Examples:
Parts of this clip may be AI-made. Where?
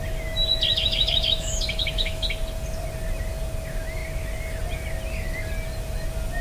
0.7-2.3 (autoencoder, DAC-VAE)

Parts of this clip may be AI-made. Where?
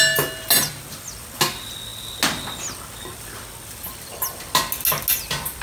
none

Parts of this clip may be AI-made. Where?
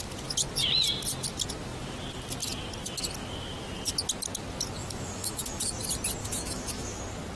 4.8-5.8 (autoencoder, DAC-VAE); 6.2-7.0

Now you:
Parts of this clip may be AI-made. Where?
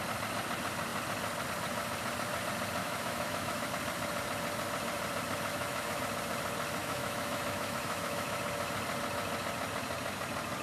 2.8-3.7 (autoencoder, DAC-VAE); 5.5-6.0; 6.8-8.4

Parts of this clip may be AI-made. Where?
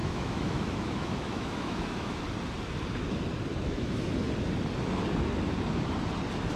0.0-2.2 (autoencoder, DAC-VAE); 3.5-4.1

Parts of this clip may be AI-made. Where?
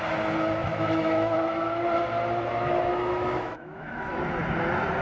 0.6-1.5 (autoencoder, DAC-VAE); 2.9-4.2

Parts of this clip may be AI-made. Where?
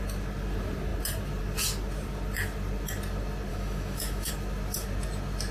3.5-4.3 (autoencoder, DAC-VAE)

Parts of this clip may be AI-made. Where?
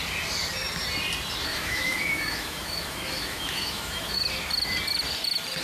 1.5-4.1 (autoencoder, DAC-VAE)